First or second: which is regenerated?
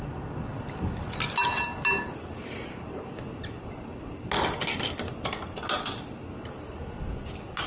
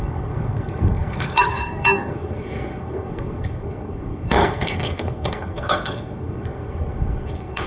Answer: second